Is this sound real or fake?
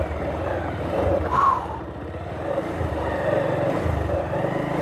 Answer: fake